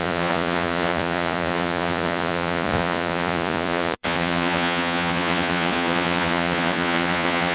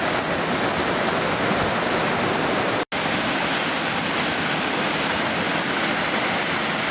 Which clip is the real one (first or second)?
second